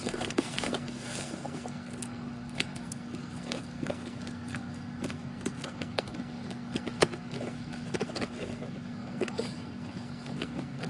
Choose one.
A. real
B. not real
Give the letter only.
B